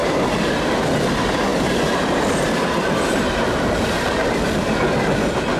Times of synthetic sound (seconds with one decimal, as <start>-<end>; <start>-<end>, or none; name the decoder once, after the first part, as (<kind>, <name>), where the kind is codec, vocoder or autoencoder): 1.5-4.5 (vocoder, BigVGAN v2)